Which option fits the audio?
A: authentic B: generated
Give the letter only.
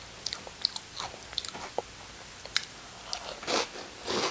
A